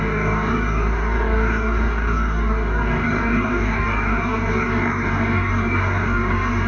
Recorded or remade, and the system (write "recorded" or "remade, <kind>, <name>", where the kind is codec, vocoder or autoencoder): remade, codec, DAC